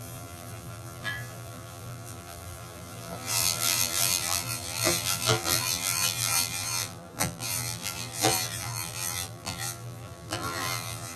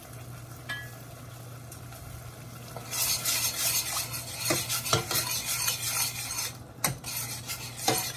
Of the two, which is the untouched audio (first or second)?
second